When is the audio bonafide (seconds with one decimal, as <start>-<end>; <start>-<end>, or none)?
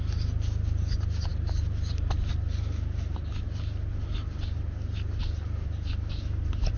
0.0-6.8